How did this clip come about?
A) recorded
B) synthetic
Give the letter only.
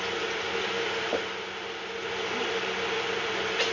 A